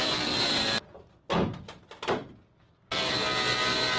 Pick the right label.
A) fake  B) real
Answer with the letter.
B